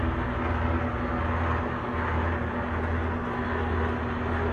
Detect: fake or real real